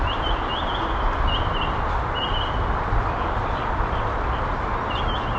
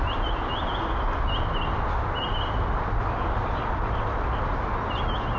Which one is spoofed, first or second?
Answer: first